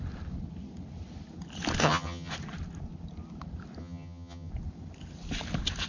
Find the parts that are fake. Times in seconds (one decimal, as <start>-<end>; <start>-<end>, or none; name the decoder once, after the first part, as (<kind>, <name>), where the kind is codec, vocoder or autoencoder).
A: 1.8-2.3 (vocoder, HiFi-GAN); 3.8-4.5

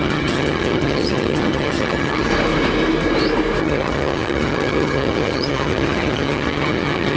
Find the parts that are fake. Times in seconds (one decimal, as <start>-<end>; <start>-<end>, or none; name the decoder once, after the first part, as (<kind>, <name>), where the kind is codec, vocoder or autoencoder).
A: 0.0-2.3 (vocoder, HiFi-GAN); 3.6-7.2

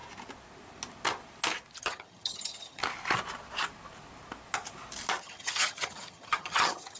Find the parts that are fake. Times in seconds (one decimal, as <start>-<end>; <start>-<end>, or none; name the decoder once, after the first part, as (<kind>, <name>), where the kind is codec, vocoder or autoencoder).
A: 1.8-2.8 (vocoder, HiFi-GAN); 5.2-7.0

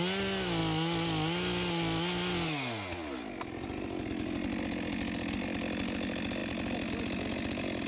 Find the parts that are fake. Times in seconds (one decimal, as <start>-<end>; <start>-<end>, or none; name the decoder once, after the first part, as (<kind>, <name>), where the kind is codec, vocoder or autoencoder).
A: none

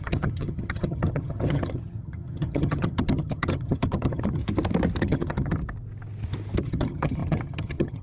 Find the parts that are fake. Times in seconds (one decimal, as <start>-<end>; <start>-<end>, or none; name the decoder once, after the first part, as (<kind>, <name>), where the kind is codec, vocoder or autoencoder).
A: 0.0-4.4 (vocoder, HiFi-GAN); 5.0-5.6; 6.6-8.0

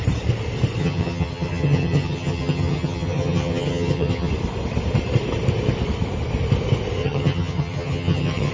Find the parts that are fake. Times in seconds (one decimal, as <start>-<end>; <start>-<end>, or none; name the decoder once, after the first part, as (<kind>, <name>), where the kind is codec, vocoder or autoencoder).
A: 0.8-4.3 (vocoder, HiFi-GAN); 7.0-8.5